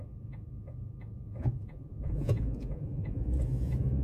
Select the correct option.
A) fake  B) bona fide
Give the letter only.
A